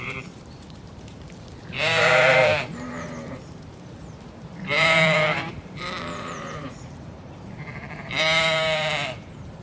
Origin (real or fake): fake